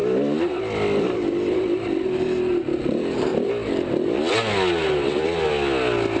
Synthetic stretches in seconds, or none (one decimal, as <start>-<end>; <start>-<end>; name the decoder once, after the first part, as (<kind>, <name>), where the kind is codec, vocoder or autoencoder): none